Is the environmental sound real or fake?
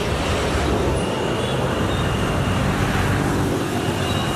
real